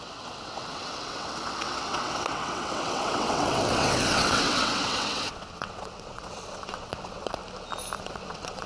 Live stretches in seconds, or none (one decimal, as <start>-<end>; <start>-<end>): 7.4-8.0